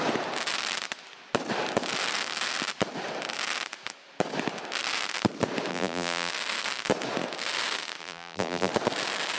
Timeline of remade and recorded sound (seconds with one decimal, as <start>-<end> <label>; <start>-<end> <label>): 0.0-5.7 recorded; 5.7-6.3 remade; 6.3-8.0 recorded; 8.0-8.7 remade; 8.7-9.4 recorded